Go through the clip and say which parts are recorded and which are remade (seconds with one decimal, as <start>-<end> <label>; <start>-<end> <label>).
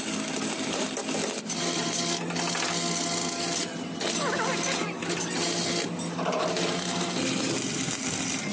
0.0-8.5 recorded